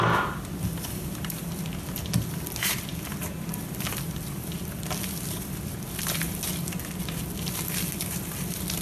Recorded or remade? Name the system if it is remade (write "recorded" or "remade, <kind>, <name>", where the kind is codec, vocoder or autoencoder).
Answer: recorded